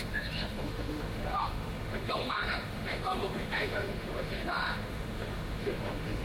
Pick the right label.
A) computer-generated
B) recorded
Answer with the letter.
A